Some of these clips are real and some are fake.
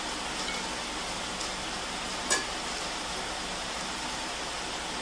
real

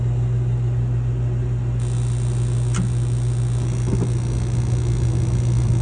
real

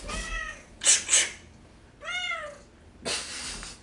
real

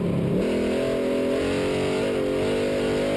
real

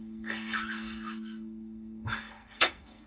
fake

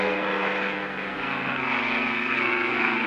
fake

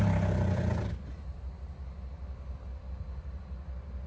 real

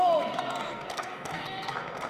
fake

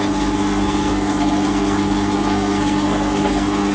fake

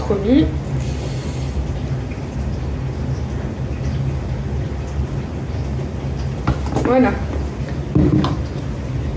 real